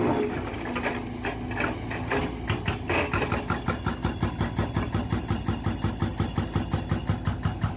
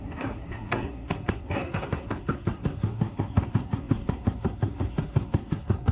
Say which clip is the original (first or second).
first